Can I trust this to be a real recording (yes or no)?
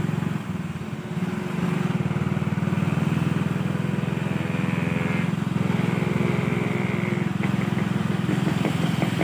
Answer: yes